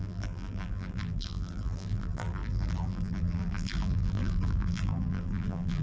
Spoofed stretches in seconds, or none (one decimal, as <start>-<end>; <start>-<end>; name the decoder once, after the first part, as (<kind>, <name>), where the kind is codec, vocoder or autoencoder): 0.0-5.8 (vocoder, BigVGAN v2)